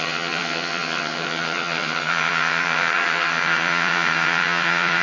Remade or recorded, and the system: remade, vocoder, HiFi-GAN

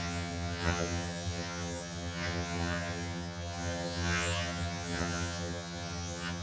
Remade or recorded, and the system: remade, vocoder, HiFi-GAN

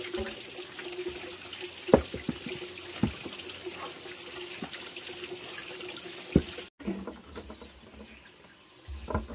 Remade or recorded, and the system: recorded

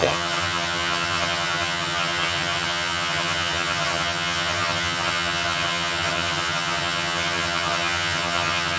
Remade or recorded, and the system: remade, vocoder, HiFi-GAN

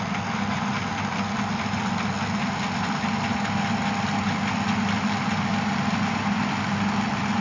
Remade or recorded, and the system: recorded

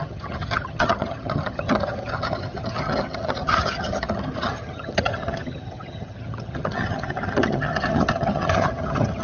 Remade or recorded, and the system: remade, vocoder, HiFi-GAN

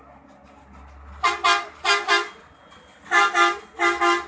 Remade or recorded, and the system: recorded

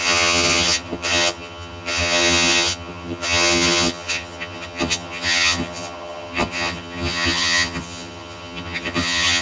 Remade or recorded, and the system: remade, vocoder, HiFi-GAN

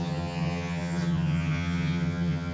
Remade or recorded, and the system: remade, vocoder, HiFi-GAN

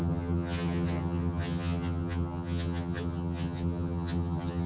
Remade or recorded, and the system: remade, vocoder, HiFi-GAN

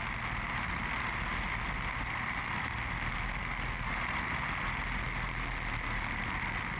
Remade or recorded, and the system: recorded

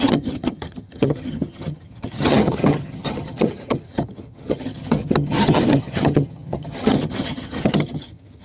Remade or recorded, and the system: remade, vocoder, HiFi-GAN